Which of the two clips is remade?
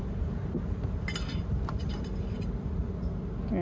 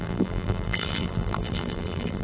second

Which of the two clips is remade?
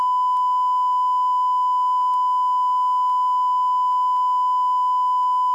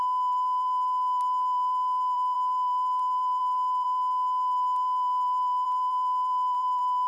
second